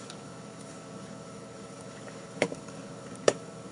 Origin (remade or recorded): remade